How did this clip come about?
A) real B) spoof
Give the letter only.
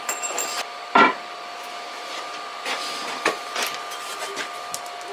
B